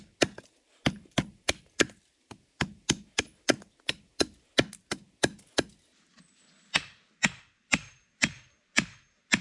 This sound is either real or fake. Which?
real